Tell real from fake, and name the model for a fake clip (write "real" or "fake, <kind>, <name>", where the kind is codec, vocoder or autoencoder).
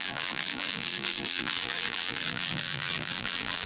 fake, vocoder, BigVGAN v2